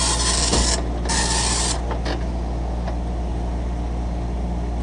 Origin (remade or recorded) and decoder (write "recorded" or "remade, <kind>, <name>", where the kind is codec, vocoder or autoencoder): recorded